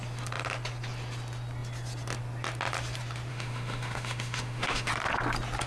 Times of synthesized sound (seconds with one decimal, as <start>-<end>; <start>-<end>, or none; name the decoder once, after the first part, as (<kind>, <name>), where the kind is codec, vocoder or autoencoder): 3.3-4.9 (autoencoder, DAC-VAE)